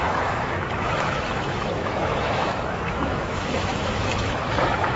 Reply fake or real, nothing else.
fake